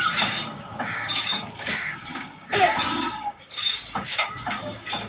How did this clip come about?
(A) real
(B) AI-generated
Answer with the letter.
B